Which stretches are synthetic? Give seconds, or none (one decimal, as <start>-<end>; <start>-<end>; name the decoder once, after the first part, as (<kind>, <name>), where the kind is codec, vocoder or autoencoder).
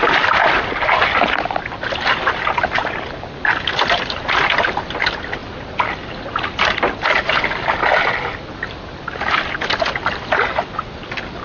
none